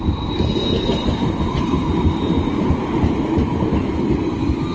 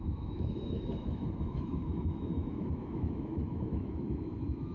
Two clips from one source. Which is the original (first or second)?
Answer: first